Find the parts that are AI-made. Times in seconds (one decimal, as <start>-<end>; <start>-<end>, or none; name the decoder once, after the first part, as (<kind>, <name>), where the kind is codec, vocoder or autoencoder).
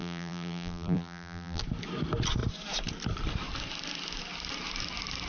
0.0-1.6 (vocoder, BigVGAN v2)